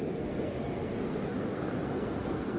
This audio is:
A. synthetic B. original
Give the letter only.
A